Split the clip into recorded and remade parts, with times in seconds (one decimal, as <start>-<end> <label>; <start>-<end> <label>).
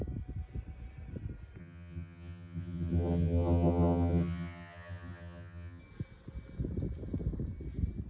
0.0-1.6 recorded; 1.6-5.8 remade; 5.8-8.1 recorded